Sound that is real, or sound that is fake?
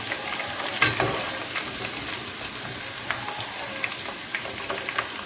real